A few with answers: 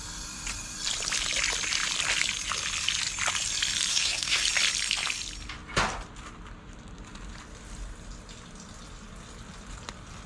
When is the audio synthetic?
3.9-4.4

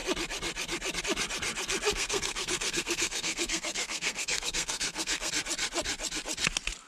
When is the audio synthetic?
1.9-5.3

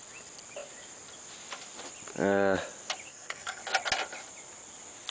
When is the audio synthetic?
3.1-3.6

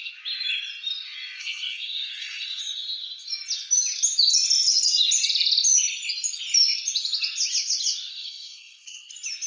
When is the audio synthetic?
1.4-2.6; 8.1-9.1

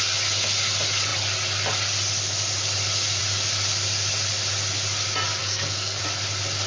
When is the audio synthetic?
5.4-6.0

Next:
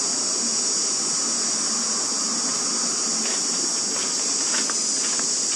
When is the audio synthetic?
none

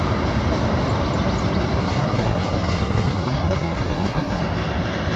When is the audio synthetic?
1.8-4.4